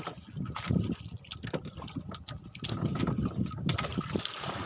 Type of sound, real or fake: real